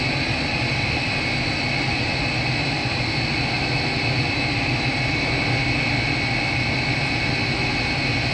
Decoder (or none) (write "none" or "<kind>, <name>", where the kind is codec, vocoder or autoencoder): none